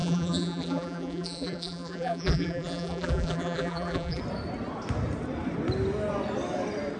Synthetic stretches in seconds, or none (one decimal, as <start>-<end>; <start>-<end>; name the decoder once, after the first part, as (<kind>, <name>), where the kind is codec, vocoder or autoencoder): 0.0-4.2 (vocoder, BigVGAN v2)